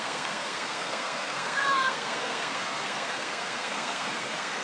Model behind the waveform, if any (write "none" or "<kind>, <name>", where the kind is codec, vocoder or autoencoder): codec, SNAC